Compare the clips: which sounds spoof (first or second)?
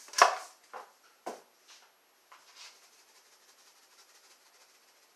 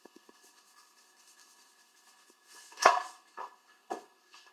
second